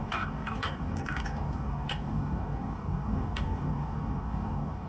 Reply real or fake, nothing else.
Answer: fake